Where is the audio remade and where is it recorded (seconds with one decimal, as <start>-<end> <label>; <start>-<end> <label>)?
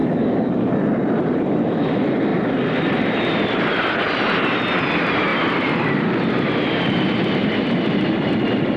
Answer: 0.0-0.7 remade; 0.7-8.8 recorded